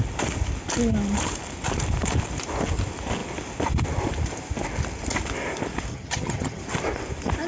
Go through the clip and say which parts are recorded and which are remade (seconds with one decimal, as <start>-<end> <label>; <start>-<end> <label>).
0.0-5.9 recorded; 5.9-6.6 remade; 6.6-7.5 recorded